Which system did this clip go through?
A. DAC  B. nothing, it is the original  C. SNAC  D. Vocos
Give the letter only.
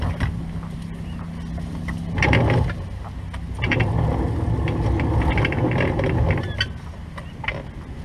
B